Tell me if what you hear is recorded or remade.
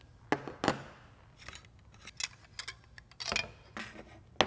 recorded